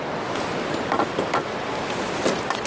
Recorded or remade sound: recorded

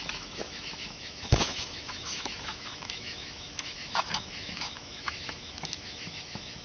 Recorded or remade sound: remade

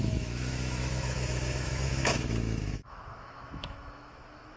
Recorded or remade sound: remade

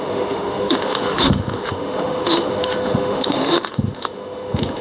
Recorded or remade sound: remade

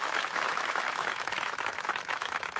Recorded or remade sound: remade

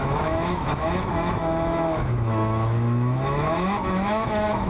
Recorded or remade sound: remade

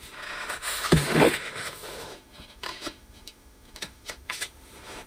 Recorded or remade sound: remade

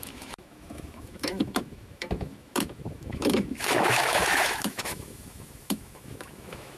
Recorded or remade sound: remade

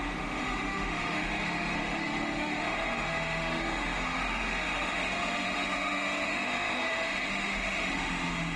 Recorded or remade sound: remade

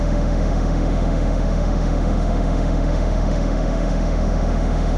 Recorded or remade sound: remade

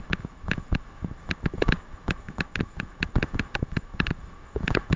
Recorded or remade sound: remade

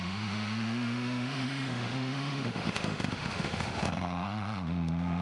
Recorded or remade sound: remade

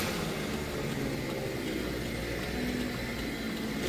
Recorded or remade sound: recorded